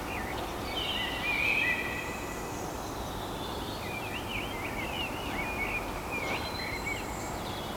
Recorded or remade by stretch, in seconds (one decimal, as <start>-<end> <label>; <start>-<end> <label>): 0.0-7.8 recorded